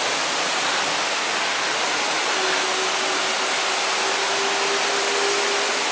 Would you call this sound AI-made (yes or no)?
no